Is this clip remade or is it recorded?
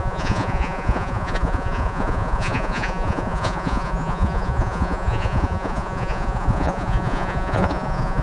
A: remade